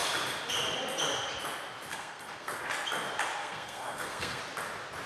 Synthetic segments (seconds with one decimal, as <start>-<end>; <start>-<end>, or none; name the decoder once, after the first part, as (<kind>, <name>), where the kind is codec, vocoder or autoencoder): 1.9-2.5 (codec, SNAC); 3.4-4.4